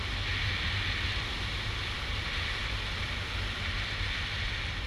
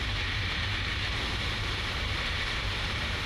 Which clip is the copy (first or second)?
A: second